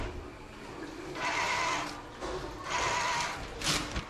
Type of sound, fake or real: real